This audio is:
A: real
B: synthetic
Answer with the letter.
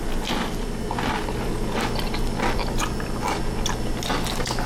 A